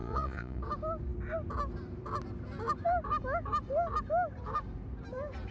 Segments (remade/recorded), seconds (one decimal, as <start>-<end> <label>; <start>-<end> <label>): 0.0-0.6 remade; 0.6-5.5 recorded

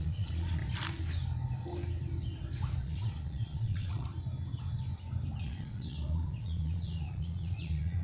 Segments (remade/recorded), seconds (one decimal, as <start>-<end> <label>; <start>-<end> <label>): 0.0-0.6 remade; 0.6-2.8 recorded; 2.8-4.1 remade; 4.1-5.4 recorded; 5.4-8.0 remade

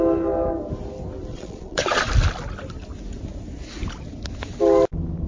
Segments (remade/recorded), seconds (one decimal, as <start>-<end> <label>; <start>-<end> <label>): 0.0-1.3 recorded; 1.3-2.1 remade; 2.1-5.3 recorded

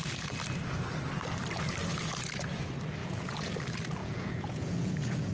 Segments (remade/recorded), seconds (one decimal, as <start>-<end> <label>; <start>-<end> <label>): 0.0-3.0 recorded; 3.0-3.5 remade; 3.5-4.0 recorded; 4.0-5.3 remade

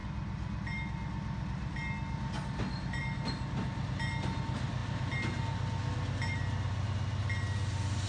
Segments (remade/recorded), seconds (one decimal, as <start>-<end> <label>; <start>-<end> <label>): 0.0-8.1 recorded

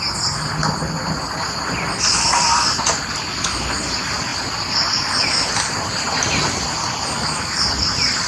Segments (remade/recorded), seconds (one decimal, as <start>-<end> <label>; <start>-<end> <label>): 0.0-8.3 recorded

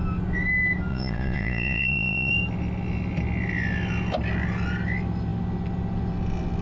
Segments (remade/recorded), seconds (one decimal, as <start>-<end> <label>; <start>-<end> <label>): 0.0-0.9 recorded; 0.9-2.3 remade; 2.3-6.6 recorded